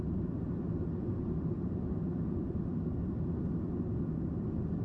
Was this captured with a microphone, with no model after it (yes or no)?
yes